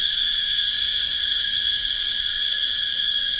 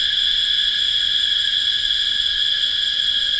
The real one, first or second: second